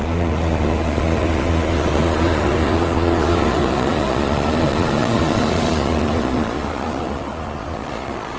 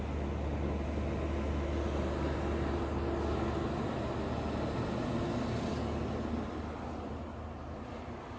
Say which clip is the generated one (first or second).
first